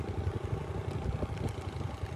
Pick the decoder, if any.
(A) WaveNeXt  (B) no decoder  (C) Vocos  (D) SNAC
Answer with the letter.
B